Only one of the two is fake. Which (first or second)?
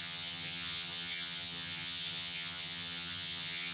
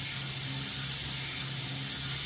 first